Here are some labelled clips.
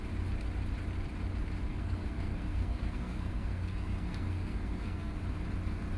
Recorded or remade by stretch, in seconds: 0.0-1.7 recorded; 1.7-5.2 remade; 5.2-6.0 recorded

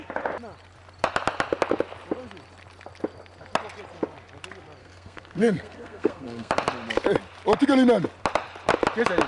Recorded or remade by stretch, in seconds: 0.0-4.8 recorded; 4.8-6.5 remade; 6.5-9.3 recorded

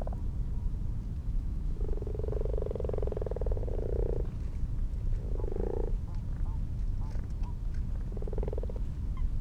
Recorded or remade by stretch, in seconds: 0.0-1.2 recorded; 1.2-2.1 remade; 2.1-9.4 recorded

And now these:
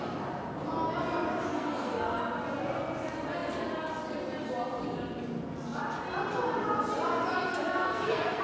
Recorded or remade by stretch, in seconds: 0.0-1.5 recorded; 1.5-2.2 remade; 2.2-7.5 recorded; 7.5-8.4 remade

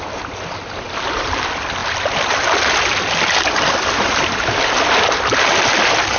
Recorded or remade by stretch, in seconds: 0.0-6.2 recorded

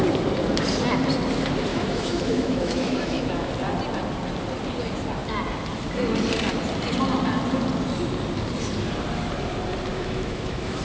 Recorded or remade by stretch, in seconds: 0.0-1.7 recorded; 1.7-3.5 remade; 3.5-9.9 recorded; 9.9-10.8 remade

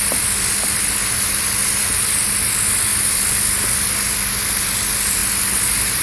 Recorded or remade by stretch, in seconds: 0.0-6.0 recorded